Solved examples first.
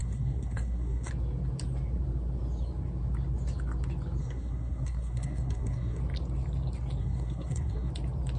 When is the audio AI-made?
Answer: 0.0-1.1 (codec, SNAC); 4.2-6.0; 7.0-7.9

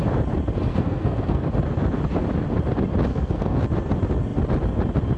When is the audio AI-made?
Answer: 0.7-1.4 (codec, SNAC); 3.1-3.6

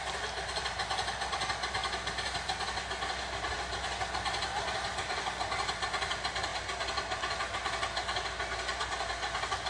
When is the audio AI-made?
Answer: none

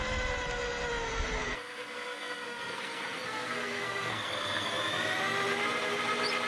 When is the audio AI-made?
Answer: 1.4-4.7 (codec, SNAC)

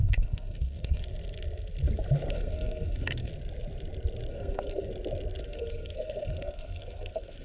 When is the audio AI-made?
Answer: 0.0-1.0 (codec, SNAC); 2.3-3.3; 4.3-4.9; 5.4-7.4

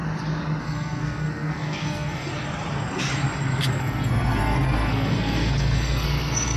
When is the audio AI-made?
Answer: 0.6-2.3 (codec, SNAC); 3.7-6.6

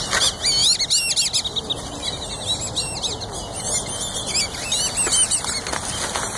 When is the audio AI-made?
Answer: none